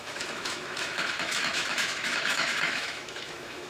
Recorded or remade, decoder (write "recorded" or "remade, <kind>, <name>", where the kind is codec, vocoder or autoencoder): remade, autoencoder, DAC-VAE